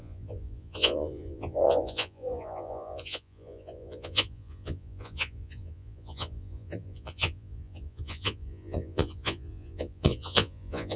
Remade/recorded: remade